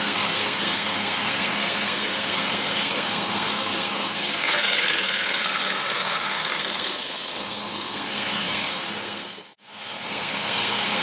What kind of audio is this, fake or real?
fake